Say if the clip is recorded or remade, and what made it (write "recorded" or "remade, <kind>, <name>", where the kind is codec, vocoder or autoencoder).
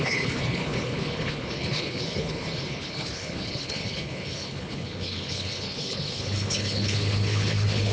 remade, codec, HILCodec